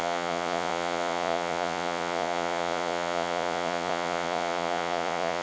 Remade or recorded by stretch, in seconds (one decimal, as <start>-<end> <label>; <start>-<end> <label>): 0.0-5.4 remade